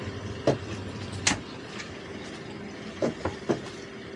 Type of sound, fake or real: real